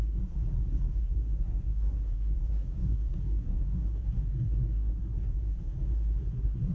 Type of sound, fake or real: fake